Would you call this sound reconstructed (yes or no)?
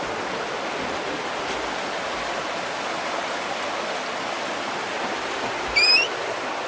no